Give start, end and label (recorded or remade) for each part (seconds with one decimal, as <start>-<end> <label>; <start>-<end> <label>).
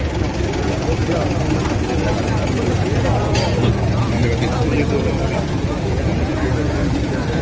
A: 0.0-7.4 recorded